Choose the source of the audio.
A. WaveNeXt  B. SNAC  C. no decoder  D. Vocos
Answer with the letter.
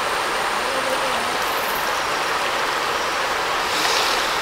C